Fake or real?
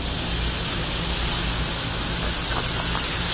real